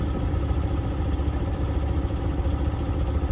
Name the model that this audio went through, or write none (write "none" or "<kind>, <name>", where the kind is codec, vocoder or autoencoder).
none